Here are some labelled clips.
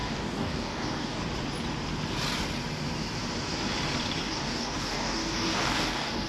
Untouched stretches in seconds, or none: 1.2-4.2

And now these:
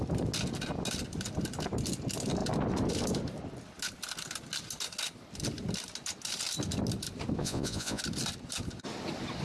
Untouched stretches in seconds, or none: 0.0-7.4; 8.0-9.4